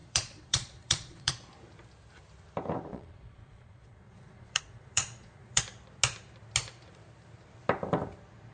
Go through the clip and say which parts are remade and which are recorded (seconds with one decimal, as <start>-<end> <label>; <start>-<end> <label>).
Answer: 0.0-1.3 remade; 1.3-2.9 recorded; 2.9-5.6 remade; 5.6-8.5 recorded